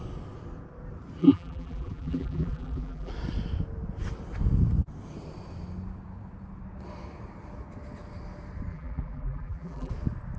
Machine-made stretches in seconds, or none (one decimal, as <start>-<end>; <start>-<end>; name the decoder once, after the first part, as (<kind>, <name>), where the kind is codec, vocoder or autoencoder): 1.2-3.1 (vocoder, BigVGAN v2); 8.7-9.9